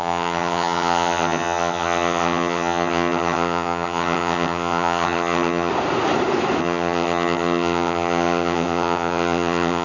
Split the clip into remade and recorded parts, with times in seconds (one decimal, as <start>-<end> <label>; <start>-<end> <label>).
0.0-5.7 remade; 5.7-6.6 recorded; 6.6-9.8 remade